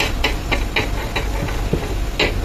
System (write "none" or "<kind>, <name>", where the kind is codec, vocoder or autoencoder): none